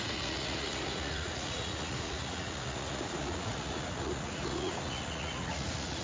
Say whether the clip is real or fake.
fake